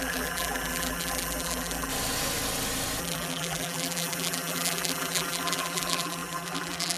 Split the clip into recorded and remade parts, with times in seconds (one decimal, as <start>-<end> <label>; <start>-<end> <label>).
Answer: 0.0-1.9 remade; 1.9-3.0 recorded; 3.0-7.0 remade